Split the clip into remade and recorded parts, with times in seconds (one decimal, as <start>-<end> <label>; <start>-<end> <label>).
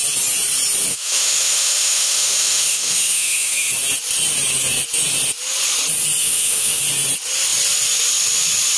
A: 0.0-0.9 recorded; 0.9-3.7 remade; 3.7-6.2 recorded; 6.2-6.8 remade; 6.8-8.8 recorded